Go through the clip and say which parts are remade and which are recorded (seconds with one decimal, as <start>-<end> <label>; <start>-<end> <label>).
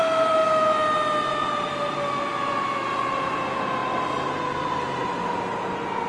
0.0-6.1 recorded